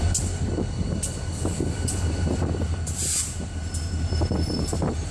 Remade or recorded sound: recorded